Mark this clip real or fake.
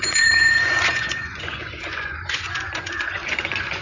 fake